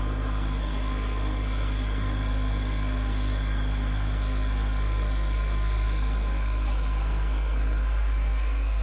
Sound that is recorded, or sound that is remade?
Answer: remade